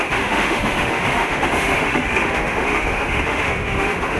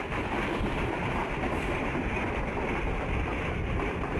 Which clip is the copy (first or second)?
first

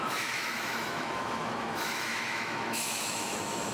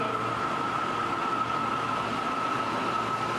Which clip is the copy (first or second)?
first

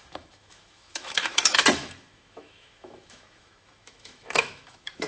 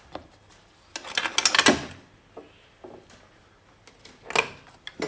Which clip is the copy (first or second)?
first